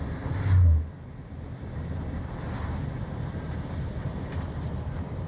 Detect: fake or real real